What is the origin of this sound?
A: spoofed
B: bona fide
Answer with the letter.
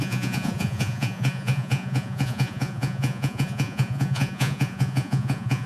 A